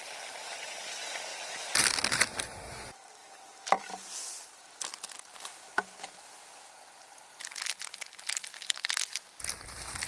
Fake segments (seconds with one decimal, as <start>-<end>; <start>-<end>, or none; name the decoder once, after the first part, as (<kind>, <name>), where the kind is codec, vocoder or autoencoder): none